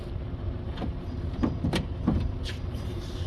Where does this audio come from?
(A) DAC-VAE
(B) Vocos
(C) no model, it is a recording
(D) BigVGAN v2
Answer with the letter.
D